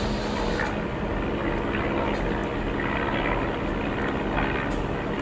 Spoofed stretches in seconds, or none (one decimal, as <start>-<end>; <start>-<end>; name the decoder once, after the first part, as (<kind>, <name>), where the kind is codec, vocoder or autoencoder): none